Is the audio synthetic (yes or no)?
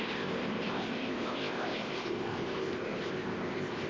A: yes